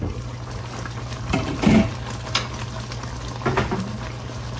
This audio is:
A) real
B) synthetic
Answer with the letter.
A